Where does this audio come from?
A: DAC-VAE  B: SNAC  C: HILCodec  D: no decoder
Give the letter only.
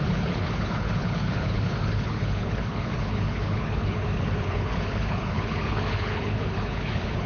C